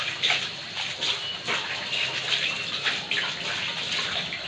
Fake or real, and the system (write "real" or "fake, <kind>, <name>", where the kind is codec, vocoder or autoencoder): real